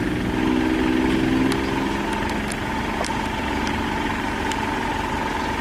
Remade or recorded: recorded